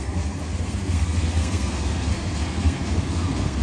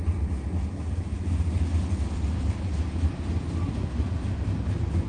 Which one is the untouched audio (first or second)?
second